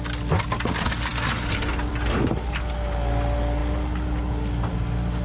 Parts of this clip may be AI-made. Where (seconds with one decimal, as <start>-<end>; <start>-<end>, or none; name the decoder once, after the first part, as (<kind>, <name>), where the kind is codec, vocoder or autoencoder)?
none